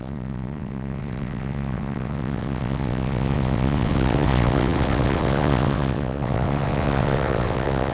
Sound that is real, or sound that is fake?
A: fake